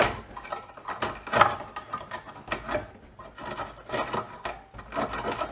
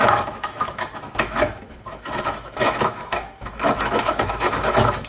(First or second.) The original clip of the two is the first